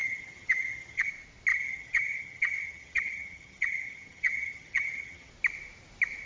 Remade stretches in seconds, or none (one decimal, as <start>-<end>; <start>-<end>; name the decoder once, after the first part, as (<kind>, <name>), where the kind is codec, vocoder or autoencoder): 0.0-1.1 (vocoder, HiFi-GAN); 1.5-5.3